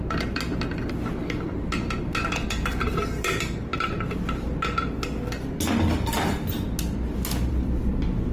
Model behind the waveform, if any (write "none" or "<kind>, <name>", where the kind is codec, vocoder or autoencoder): none